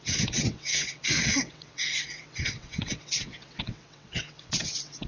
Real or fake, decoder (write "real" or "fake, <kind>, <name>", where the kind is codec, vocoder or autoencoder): fake, vocoder, WaveNeXt